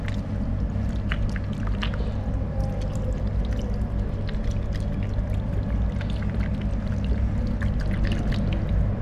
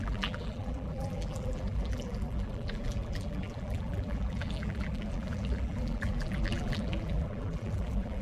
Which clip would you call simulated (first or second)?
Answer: second